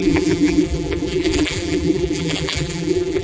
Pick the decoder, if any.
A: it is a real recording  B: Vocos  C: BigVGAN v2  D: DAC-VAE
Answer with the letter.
C